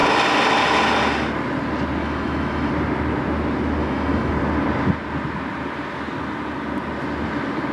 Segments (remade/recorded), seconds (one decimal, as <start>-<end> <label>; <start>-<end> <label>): 0.0-2.0 recorded; 2.0-2.7 remade; 2.7-3.8 recorded; 3.8-4.3 remade; 4.3-7.7 recorded